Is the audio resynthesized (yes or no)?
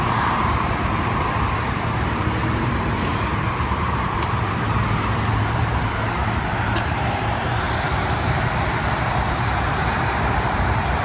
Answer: yes